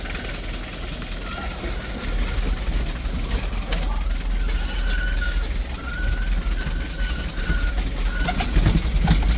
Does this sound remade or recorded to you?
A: recorded